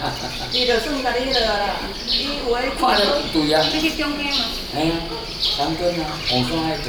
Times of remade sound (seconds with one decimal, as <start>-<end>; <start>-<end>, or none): none